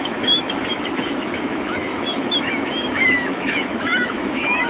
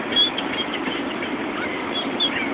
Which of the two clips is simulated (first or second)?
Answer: first